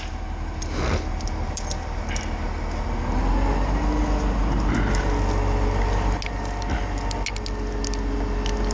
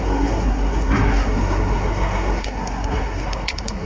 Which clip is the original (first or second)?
first